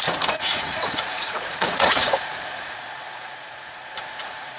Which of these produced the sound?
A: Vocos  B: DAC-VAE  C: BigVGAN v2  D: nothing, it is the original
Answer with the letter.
A